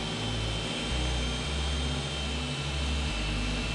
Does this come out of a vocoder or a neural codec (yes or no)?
no